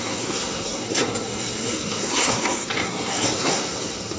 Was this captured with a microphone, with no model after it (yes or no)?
no